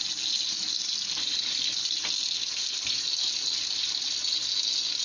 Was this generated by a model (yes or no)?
no